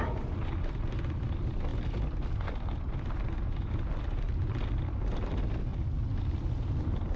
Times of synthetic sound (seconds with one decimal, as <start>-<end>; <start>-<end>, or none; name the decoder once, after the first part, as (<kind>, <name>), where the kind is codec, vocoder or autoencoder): 0.0-1.7 (vocoder, BigVGAN v2); 4.2-5.7; 6.3-7.2